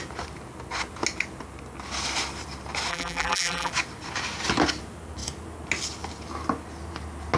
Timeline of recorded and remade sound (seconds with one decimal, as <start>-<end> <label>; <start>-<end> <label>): 0.0-2.9 recorded; 2.9-3.7 remade; 3.7-7.4 recorded